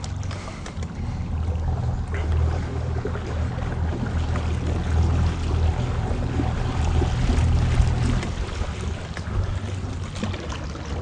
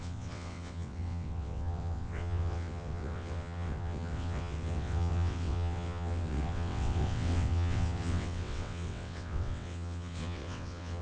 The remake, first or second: second